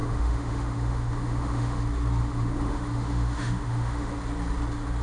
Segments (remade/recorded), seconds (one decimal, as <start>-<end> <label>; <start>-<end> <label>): 0.0-1.8 remade; 1.8-2.2 recorded; 2.2-4.1 remade; 4.1-5.0 recorded